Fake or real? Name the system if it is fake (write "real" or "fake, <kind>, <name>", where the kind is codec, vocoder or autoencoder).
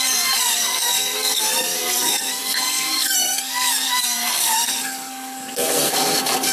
fake, codec, SNAC